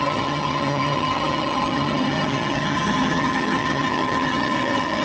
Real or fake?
fake